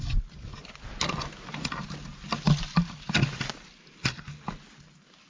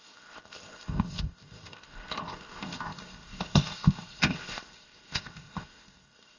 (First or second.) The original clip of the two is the first